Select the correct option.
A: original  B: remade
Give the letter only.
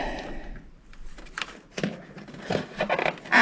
A